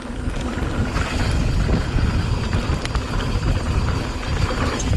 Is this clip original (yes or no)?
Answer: yes